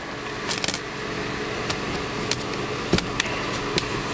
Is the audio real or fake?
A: real